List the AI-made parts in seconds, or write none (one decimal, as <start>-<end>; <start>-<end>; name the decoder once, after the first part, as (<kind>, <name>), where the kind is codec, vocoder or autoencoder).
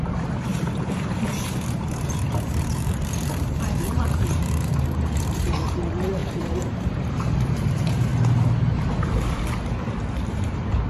0.0-8.1 (vocoder, BigVGAN v2); 10.3-10.9